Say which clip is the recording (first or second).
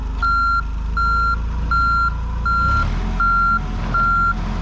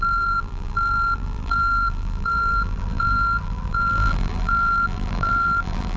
first